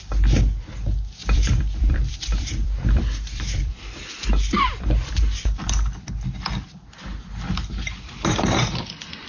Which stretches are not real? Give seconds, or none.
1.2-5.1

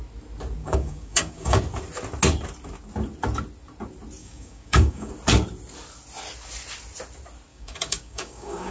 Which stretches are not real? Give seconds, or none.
0.6-1.6; 4.2-5.1; 7.5-8.7